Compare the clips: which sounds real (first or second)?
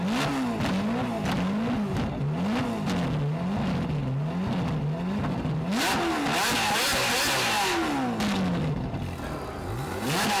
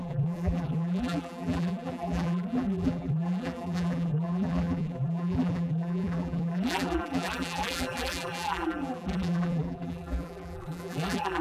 first